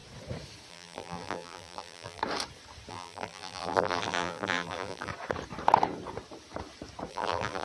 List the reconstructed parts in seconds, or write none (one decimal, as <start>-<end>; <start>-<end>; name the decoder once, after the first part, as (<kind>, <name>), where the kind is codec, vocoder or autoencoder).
0.7-2.2 (vocoder, BigVGAN v2); 2.9-5.1; 7.1-7.6